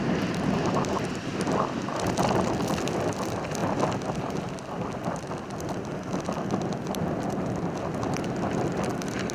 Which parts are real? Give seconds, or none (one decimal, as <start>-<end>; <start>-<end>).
0.0-9.3